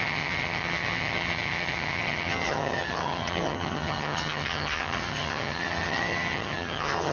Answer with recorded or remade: remade